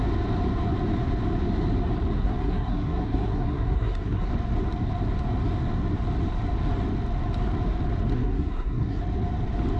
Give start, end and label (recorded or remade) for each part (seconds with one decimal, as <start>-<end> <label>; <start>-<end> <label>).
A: 0.0-2.2 recorded; 2.2-4.3 remade; 4.3-8.1 recorded; 8.1-9.0 remade; 9.0-9.8 recorded